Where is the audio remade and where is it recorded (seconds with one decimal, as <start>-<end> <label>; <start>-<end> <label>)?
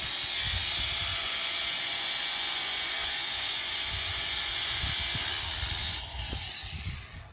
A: 0.0-1.1 recorded; 1.1-4.9 remade; 4.9-5.8 recorded; 5.8-6.4 remade; 6.4-7.3 recorded